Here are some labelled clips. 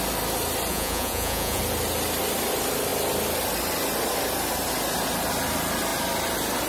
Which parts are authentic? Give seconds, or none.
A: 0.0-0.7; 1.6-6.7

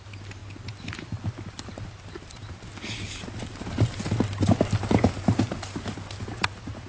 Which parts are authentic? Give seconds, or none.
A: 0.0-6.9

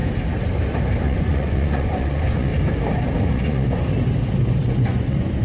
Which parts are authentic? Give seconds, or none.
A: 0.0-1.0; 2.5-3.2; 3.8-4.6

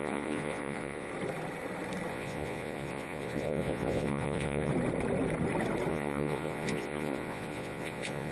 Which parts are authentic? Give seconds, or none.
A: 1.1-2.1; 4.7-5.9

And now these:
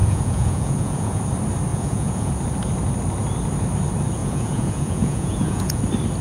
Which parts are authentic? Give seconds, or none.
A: 1.2-1.7; 2.3-4.2; 5.8-6.2

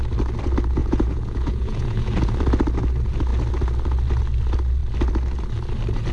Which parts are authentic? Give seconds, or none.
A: 0.0-0.8; 2.3-6.1

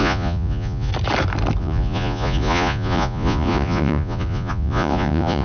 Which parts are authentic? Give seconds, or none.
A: 0.9-1.6